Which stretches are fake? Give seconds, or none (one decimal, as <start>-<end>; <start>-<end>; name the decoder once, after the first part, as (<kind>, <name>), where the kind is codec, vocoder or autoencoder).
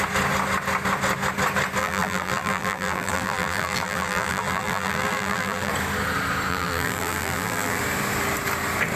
1.8-5.7 (vocoder, BigVGAN v2); 6.5-7.8